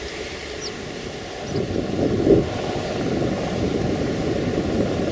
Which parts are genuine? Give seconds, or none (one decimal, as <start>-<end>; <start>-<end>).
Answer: 0.4-3.5